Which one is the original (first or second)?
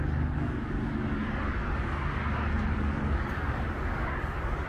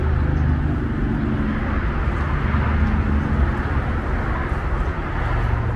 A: second